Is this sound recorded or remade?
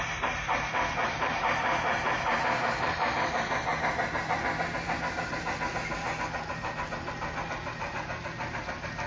recorded